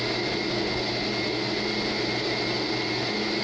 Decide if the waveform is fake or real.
real